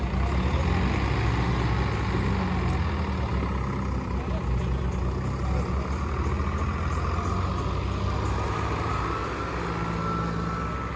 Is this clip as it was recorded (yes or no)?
yes